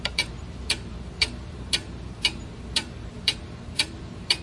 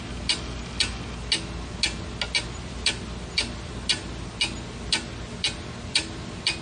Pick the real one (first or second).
second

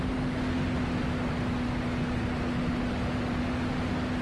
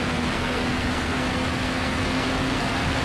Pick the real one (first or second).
first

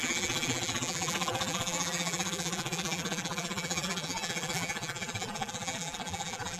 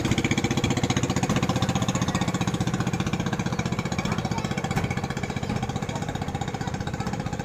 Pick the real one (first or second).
second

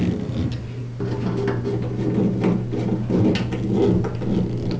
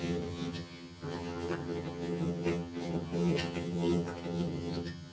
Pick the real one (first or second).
first